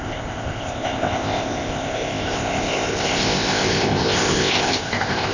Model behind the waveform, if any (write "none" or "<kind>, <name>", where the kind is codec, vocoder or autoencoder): codec, ZipCodec